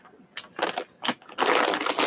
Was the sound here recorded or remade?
recorded